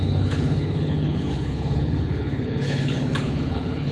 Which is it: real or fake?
fake